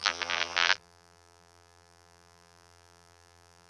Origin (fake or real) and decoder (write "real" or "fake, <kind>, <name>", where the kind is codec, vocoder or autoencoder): fake, vocoder, BigVGAN v2